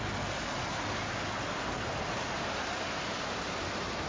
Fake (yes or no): no